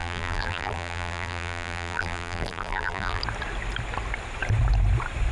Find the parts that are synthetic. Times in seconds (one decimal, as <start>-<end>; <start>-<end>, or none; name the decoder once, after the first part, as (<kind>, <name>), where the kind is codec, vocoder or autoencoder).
0.0-3.2 (vocoder, BigVGAN v2)